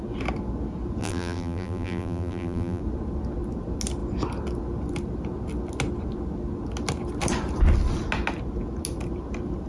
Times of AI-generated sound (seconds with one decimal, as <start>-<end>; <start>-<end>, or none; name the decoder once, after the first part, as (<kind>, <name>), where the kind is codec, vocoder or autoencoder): 1.0-2.8 (vocoder, BigVGAN v2)